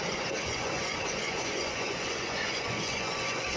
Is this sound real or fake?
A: fake